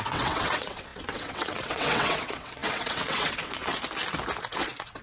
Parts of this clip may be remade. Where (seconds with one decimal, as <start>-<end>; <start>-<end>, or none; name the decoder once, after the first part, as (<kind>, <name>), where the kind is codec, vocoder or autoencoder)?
0.0-3.7 (vocoder, WaveNeXt); 4.4-5.0